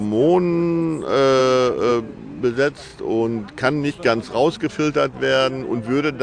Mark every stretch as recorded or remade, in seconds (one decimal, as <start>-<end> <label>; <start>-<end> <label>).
0.0-6.2 recorded